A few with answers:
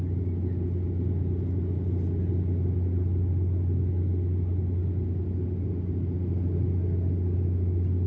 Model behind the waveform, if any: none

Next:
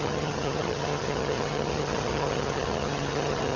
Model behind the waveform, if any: vocoder, HiFi-GAN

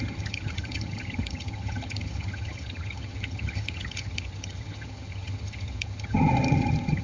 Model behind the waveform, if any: vocoder, HiFi-GAN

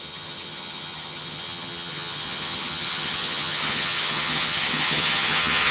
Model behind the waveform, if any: vocoder, HiFi-GAN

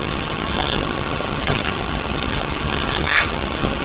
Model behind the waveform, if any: vocoder, HiFi-GAN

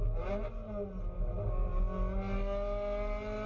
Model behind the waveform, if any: none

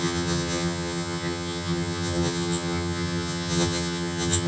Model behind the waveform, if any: vocoder, HiFi-GAN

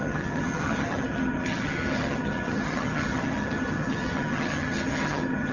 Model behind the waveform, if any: vocoder, HiFi-GAN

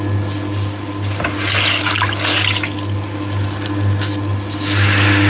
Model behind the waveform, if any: none